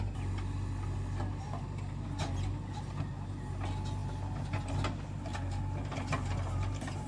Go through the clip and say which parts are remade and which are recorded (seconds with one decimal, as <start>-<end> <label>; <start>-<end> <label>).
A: 0.0-7.1 recorded